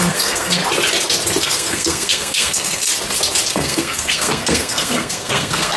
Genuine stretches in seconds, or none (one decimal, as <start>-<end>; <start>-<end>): 0.6-1.4; 2.9-3.5